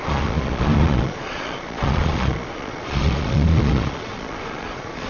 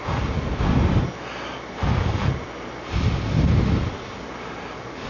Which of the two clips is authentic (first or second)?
second